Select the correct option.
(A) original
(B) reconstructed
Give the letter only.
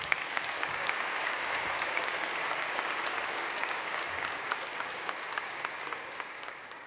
B